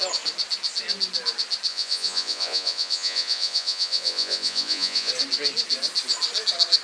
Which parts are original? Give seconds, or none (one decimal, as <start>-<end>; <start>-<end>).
0.0-1.7; 5.1-6.8